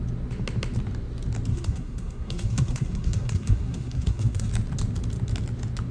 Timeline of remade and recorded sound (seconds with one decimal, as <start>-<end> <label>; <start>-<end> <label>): 0.0-1.5 recorded; 1.5-4.5 remade; 4.5-5.9 recorded